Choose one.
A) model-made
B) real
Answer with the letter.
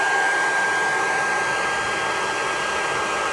A